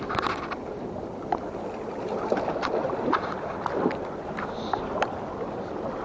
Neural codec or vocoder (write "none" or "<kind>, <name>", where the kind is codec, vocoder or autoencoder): none